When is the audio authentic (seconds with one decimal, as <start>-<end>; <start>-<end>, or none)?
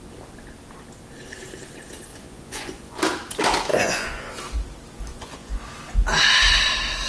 0.0-2.1; 3.0-3.7; 4.3-5.1; 5.6-7.1